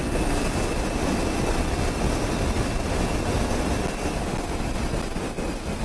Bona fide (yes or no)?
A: yes